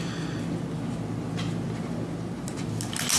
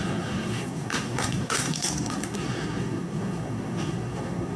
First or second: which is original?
first